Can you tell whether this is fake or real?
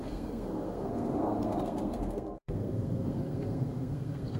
fake